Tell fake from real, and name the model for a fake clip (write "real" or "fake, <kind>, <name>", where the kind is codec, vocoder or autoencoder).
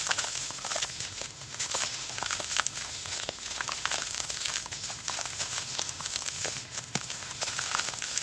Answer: fake, autoencoder, DAC-VAE